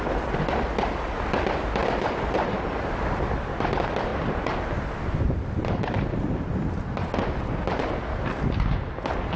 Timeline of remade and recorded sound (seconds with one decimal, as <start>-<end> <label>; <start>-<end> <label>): 0.0-1.8 recorded; 1.8-3.4 remade; 3.4-4.1 recorded; 4.1-6.6 remade; 6.6-9.4 recorded